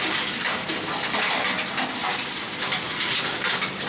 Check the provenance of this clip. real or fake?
real